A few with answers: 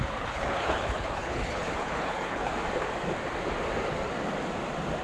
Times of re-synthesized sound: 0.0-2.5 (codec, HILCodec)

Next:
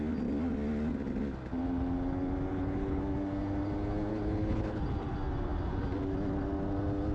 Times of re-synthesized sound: 2.5-3.0 (codec, HILCodec); 4.1-4.8

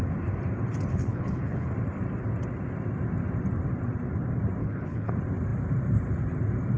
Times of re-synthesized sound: 0.9-1.7 (codec, HILCodec); 4.6-5.1

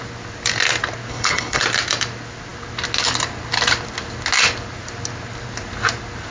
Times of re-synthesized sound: 1.1-1.6 (codec, HILCodec)

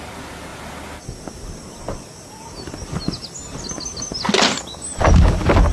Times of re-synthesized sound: none